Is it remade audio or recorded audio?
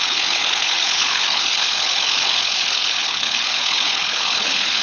remade